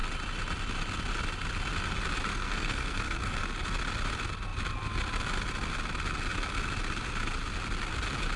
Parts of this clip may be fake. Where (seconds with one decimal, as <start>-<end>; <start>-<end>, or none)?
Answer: 2.3-3.4